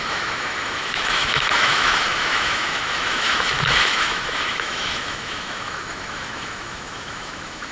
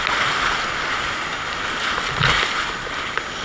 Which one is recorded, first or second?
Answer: second